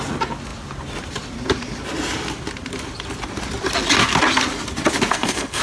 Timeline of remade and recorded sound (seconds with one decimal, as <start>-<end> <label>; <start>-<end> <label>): 0.0-5.1 recorded; 5.1-5.6 remade